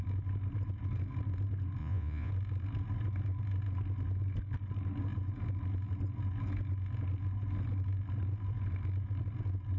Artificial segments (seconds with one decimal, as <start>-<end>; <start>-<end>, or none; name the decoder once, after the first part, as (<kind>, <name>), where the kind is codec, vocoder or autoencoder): 1.8-2.3 (vocoder, Vocos)